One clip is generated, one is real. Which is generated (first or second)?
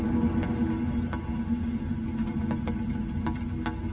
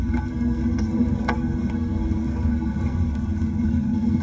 second